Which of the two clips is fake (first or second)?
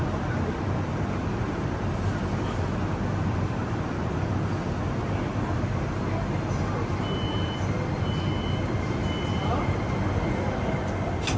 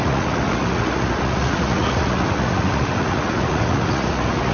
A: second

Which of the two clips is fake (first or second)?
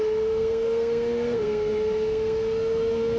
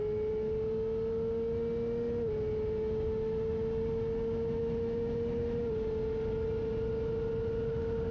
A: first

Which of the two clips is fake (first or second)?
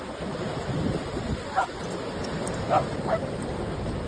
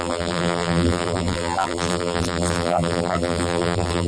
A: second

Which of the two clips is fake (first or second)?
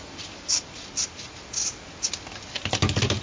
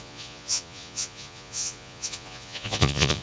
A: second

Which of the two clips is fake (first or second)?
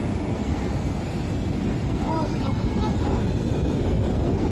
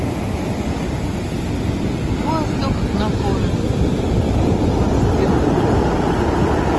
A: first